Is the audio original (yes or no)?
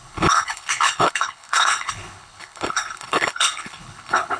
no